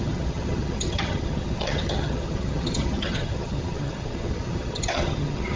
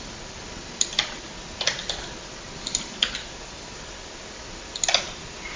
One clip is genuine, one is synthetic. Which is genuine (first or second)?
second